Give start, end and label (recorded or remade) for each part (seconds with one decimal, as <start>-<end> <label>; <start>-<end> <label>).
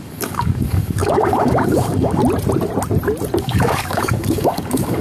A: 0.0-2.2 remade; 2.2-3.4 recorded; 3.4-5.0 remade